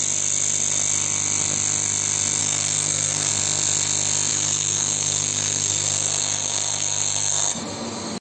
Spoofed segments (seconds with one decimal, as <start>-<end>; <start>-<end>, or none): 2.4-3.3; 4.3-7.6

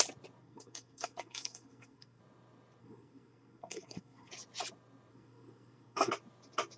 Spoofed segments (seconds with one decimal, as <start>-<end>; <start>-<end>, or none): 0.4-2.2; 2.8-4.3; 5.1-6.1

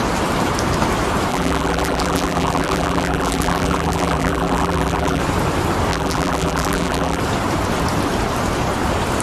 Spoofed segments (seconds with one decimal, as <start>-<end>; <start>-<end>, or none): 1.3-5.2; 5.9-7.2

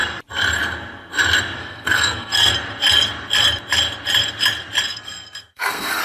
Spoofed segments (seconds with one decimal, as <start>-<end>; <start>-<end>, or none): 1.6-2.5; 4.9-6.0

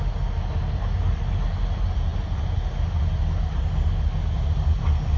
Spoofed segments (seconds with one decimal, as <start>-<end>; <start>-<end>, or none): none

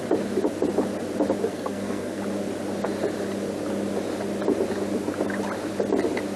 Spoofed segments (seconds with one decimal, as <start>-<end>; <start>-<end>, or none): 1.5-2.2

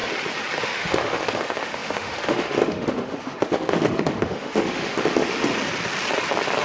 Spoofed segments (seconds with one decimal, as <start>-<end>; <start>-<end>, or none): 0.6-5.5

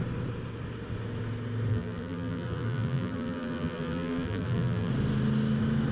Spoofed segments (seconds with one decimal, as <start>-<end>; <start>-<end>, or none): 1.7-4.9